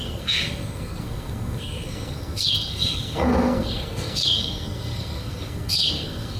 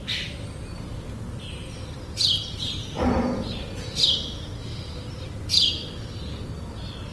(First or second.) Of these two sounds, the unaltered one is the second